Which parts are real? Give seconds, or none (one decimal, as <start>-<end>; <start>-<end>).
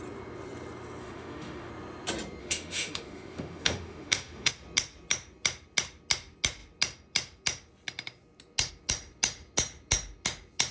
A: 0.0-1.0; 1.7-2.4; 4.5-10.7